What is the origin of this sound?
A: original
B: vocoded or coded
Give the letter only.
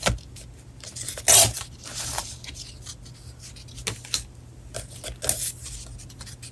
A